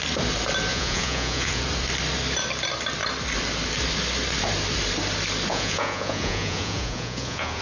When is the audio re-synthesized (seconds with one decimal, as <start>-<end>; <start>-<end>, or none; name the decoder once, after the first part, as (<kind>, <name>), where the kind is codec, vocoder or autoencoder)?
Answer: 0.7-1.6 (vocoder, Vocos); 5.5-7.6